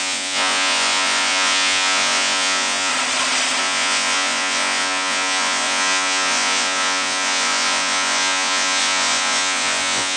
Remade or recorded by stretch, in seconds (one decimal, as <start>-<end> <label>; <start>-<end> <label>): 0.0-2.9 remade; 2.9-3.6 recorded; 3.6-10.2 remade